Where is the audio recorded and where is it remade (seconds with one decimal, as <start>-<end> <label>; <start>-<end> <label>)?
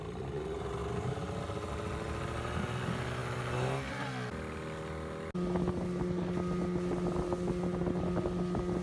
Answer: 0.0-8.8 recorded